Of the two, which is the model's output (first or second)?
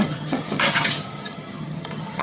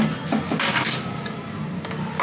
first